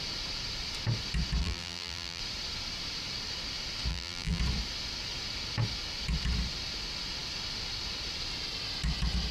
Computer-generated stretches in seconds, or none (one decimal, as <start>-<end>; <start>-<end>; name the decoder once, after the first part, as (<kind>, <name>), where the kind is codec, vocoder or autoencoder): 1.4-2.2 (vocoder, BigVGAN v2); 3.9-4.4